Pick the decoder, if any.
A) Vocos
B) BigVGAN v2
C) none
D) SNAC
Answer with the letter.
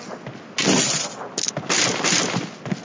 C